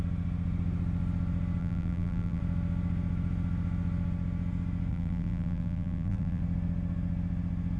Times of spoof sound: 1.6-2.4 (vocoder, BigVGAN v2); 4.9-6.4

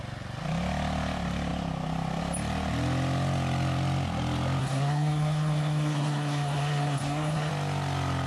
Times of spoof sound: 4.6-7.5 (codec, SNAC)

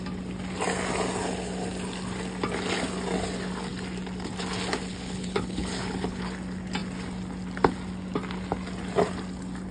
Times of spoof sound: 4.9-6.2 (codec, HILCodec)